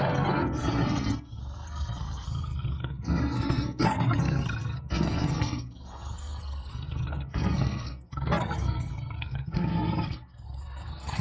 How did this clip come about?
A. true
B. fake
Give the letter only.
B